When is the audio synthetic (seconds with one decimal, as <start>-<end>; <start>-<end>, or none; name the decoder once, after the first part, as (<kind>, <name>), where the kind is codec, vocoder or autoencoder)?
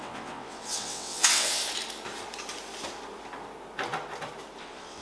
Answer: 0.0-1.6 (vocoder, WaveNeXt); 4.6-5.0